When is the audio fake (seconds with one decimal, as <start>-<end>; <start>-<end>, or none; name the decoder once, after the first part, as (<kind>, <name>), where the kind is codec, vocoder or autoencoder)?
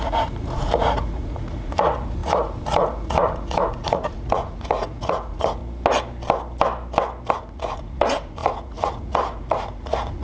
0.0-5.6 (vocoder, Vocos); 7.3-10.2